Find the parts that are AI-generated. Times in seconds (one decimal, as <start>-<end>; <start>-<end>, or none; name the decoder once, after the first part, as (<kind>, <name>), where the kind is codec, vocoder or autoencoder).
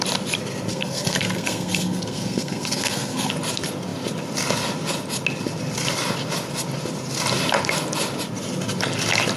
0.7-3.3 (codec, SNAC)